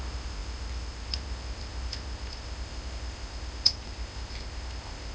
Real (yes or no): no